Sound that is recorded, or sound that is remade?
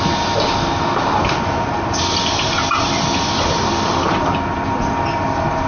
recorded